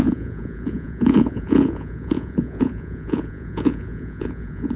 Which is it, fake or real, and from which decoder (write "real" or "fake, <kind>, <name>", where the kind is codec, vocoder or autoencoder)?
fake, vocoder, Vocos